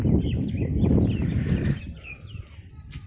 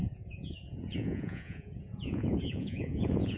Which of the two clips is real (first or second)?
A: first